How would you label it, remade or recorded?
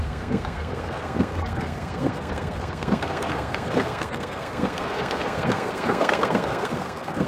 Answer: remade